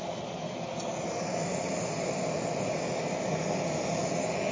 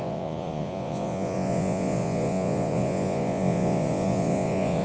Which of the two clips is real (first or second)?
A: first